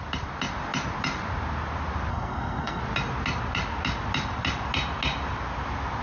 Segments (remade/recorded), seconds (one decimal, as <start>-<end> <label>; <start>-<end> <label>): 0.0-2.1 recorded; 2.1-2.8 remade; 2.8-6.0 recorded